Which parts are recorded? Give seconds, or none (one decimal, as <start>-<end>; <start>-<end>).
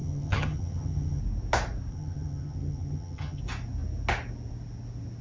1.2-1.9; 3.4-5.2